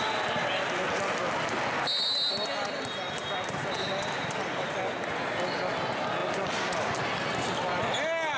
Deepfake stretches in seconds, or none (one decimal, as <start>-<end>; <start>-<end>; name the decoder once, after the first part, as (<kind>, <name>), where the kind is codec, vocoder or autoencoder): none